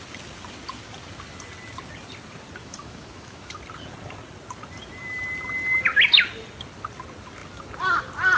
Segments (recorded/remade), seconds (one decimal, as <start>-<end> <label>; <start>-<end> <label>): 0.0-2.6 recorded; 2.6-3.6 remade; 3.6-8.4 recorded